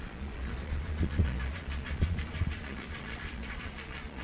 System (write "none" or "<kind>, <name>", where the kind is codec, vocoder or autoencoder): vocoder, Vocos